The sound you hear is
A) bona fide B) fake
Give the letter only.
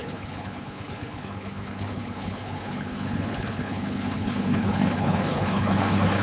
B